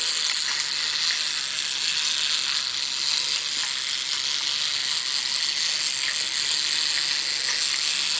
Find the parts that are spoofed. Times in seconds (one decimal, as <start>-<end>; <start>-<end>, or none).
none